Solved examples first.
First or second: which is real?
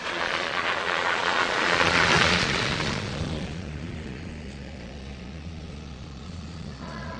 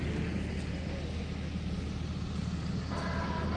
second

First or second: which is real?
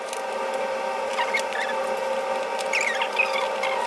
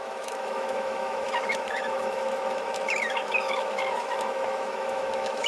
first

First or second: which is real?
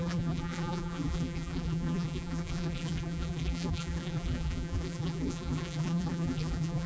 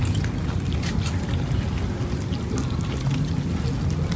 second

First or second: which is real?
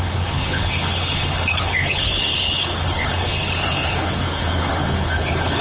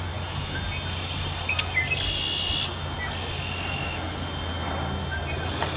second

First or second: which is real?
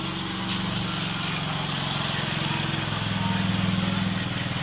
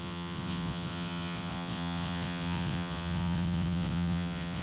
first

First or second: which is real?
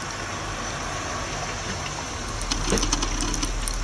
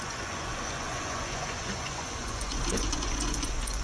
first